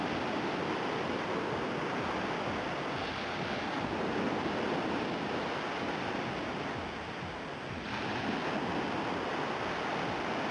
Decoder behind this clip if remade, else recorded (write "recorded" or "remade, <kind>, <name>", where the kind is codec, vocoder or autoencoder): recorded